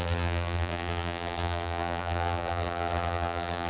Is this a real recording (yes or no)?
no